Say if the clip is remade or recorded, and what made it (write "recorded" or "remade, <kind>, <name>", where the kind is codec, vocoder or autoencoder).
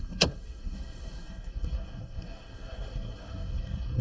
remade, codec, SNAC